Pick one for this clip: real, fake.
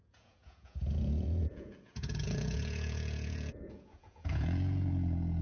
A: fake